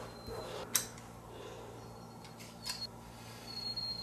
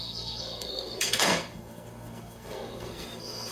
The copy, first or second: second